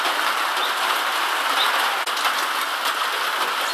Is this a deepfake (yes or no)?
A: no